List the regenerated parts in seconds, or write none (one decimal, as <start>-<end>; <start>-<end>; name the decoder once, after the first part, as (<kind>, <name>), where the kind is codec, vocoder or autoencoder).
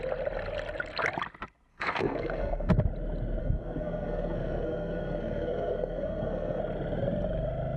1.7-2.7 (codec, SNAC); 3.4-6.6